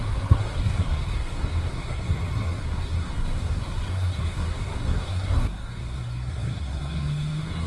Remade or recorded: remade